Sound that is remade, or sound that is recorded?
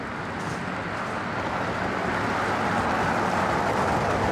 recorded